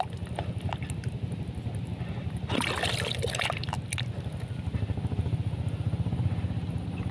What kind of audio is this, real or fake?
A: real